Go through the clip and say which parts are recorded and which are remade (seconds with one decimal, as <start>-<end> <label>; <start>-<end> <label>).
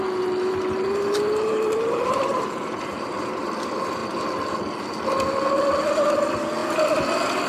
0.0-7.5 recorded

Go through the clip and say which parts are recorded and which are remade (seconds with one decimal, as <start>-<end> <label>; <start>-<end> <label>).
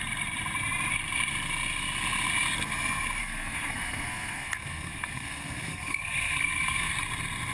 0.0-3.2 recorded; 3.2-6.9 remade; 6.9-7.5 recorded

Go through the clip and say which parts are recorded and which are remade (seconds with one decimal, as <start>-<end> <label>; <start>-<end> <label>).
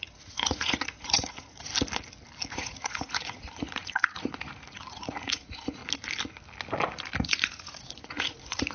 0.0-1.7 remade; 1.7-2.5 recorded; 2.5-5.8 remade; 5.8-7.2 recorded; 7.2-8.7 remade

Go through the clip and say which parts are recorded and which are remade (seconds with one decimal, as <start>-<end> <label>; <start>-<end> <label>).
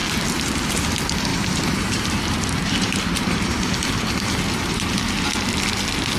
0.0-1.3 recorded; 1.3-5.0 remade; 5.0-6.2 recorded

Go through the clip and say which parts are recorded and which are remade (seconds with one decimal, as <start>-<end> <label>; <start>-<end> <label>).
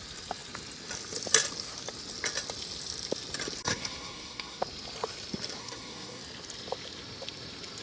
0.0-3.6 recorded; 3.6-4.6 remade; 4.6-5.6 recorded; 5.6-6.2 remade; 6.2-7.8 recorded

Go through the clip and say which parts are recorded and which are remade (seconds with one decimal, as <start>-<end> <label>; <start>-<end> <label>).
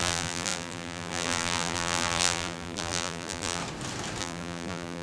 0.0-3.6 remade; 3.6-4.2 recorded; 4.2-5.0 remade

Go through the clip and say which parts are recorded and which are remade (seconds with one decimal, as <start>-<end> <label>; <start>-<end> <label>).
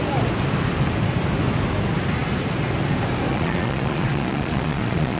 0.0-3.3 recorded; 3.3-5.2 remade